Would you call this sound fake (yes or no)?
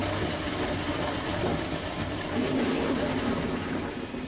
yes